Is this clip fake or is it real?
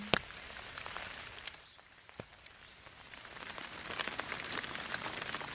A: fake